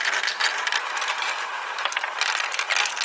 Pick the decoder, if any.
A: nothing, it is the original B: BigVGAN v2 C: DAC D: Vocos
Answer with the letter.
A